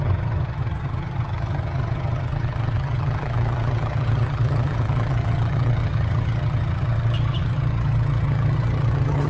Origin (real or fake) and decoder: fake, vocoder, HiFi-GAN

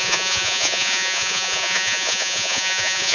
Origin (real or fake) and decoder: fake, vocoder, Vocos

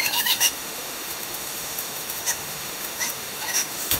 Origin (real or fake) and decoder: fake, autoencoder, DAC-VAE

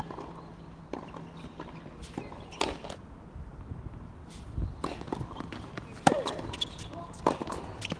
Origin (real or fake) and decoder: real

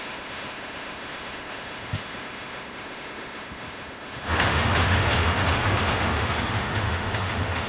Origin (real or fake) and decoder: fake, autoencoder, DAC-VAE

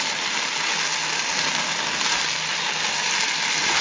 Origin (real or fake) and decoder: real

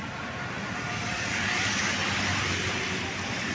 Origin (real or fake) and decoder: real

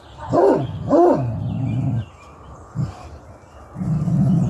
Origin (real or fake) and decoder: real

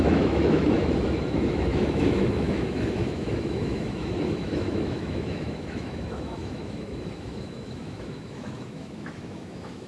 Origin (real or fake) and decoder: fake, autoencoder, DAC-VAE